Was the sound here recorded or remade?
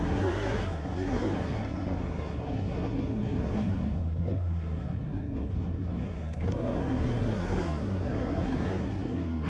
remade